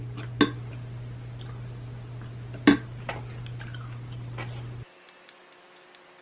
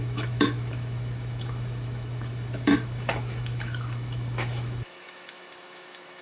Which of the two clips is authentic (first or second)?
first